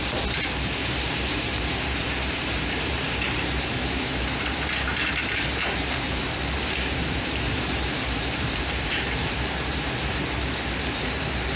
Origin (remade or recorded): remade